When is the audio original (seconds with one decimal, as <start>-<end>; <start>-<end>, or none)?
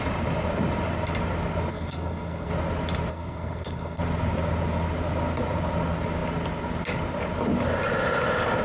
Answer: 0.0-1.7; 2.5-3.1; 4.0-8.6